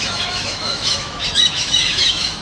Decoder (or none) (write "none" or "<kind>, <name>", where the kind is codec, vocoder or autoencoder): autoencoder, DAC-VAE